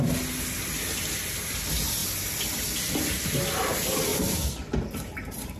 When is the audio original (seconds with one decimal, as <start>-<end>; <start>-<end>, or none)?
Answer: 0.0-4.1